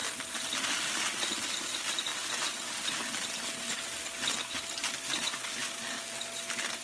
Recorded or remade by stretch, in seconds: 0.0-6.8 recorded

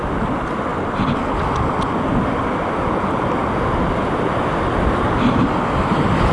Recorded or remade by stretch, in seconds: 0.0-6.3 recorded

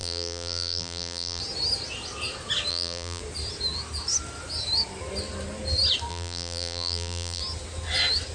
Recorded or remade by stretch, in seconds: 0.0-1.4 remade; 1.4-2.7 recorded; 2.7-3.2 remade; 3.2-6.1 recorded; 6.1-7.4 remade; 7.4-8.3 recorded

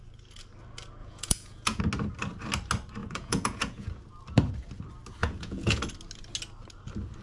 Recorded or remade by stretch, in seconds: 0.0-1.0 recorded; 1.0-1.8 remade; 1.8-3.0 recorded; 3.0-3.9 remade; 3.9-5.2 recorded; 5.2-5.8 remade; 5.8-7.2 recorded